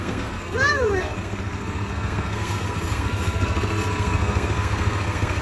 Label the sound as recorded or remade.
remade